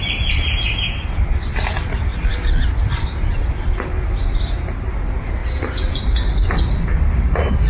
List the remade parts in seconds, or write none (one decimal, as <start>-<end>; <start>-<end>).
none